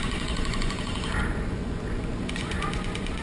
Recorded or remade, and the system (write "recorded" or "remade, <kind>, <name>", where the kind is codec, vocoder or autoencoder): remade, vocoder, Vocos